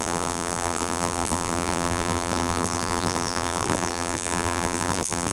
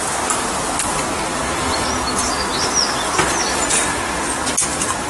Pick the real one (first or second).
second